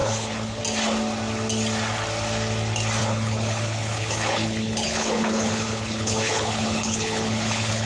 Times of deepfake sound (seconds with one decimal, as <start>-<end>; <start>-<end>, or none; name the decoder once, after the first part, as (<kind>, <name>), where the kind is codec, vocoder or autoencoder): 0.0-0.6 (codec, HILCodec); 3.0-7.9